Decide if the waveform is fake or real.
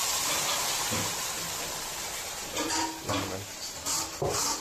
real